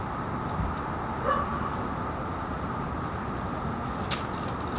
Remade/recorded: recorded